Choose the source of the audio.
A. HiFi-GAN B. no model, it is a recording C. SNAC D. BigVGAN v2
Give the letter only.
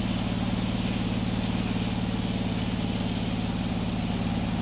B